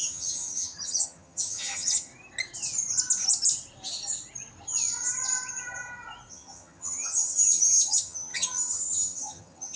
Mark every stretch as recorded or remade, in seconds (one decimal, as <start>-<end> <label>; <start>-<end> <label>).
0.0-2.1 remade; 2.1-6.3 recorded; 6.3-9.8 remade